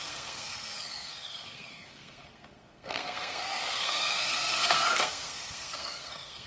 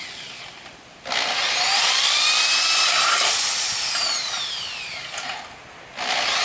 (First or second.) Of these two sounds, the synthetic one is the first